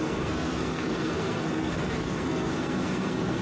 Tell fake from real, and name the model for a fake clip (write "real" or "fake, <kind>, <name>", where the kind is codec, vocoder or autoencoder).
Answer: fake, codec, SNAC